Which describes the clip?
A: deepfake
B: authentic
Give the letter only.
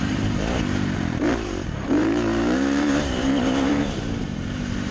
A